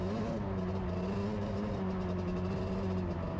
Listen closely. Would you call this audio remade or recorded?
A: recorded